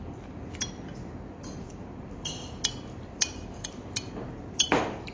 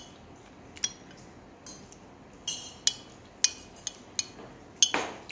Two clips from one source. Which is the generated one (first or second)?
first